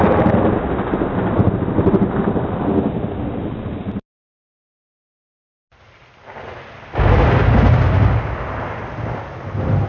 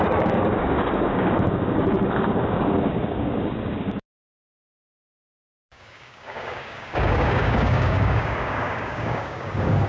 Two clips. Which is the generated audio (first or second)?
second